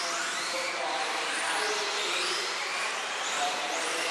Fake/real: fake